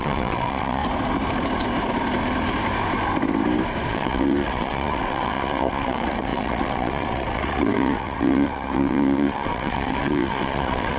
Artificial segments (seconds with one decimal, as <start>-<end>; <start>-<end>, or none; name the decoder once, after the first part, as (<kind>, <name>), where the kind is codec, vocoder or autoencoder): 0.0-0.8 (vocoder, WaveNeXt); 3.9-11.0